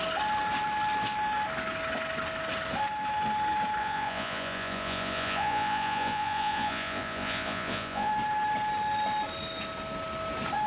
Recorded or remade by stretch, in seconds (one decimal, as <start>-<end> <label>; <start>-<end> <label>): 0.0-3.8 recorded; 3.8-8.1 remade; 8.1-10.7 recorded